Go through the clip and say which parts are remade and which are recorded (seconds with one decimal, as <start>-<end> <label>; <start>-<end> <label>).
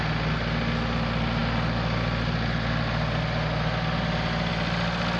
0.0-5.2 recorded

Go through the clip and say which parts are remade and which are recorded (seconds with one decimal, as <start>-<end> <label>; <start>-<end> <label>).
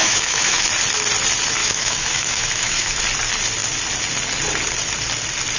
0.0-0.7 remade; 0.7-1.6 recorded; 1.6-3.0 remade; 3.0-5.6 recorded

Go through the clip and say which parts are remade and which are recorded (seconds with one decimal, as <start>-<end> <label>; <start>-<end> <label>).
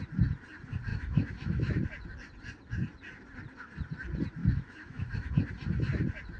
0.0-0.9 recorded; 0.9-1.7 remade; 1.7-4.4 recorded; 4.4-5.3 remade; 5.3-6.4 recorded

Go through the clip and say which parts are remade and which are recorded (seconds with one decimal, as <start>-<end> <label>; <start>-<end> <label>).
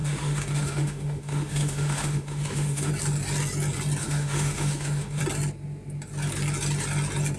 0.0-2.9 remade; 2.9-4.0 recorded; 4.0-5.2 remade; 5.2-7.4 recorded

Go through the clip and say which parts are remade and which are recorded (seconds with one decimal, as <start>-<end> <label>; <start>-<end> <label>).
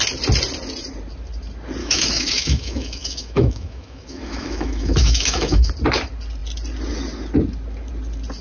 0.0-1.8 recorded; 1.8-5.7 remade; 5.7-8.4 recorded